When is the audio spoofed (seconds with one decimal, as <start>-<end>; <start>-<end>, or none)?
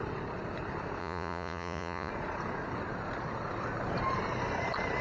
1.0-2.1